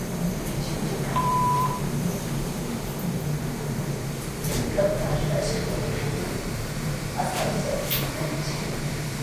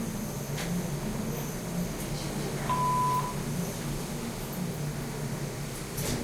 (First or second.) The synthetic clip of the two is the first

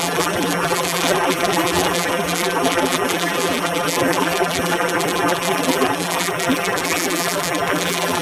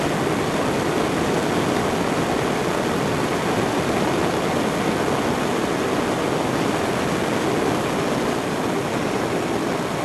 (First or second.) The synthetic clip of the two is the first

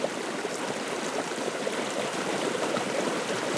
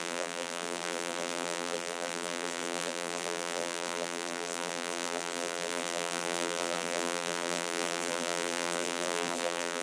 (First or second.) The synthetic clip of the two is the second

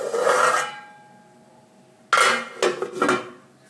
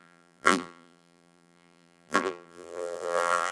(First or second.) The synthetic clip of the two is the second